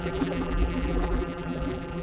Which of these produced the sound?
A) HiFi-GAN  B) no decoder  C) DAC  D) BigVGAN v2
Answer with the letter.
D